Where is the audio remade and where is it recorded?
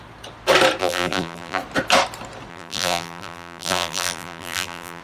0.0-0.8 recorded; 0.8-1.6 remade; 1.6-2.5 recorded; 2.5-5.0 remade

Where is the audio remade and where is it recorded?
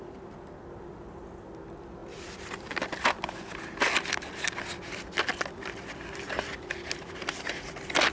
0.0-8.1 recorded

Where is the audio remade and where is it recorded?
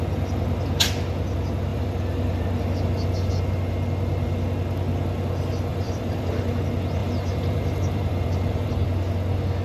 0.0-1.7 recorded; 1.7-2.4 remade; 2.4-5.7 recorded; 5.7-6.6 remade; 6.6-7.0 recorded; 7.0-8.7 remade; 8.7-9.6 recorded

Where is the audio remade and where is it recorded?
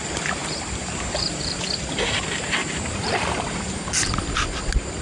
0.0-0.4 recorded; 0.4-1.6 remade; 1.6-2.6 recorded; 2.6-4.2 remade; 4.2-5.0 recorded